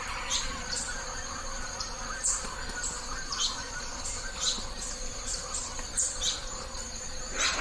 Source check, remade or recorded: recorded